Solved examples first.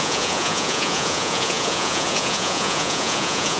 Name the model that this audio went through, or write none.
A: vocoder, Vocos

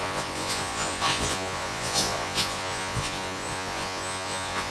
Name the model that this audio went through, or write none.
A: vocoder, Vocos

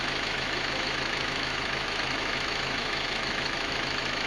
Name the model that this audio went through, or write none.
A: autoencoder, DAC-VAE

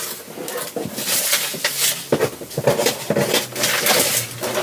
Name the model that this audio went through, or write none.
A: none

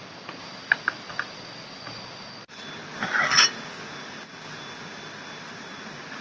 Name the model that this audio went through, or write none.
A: none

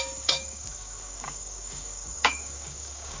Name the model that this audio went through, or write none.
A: codec, DAC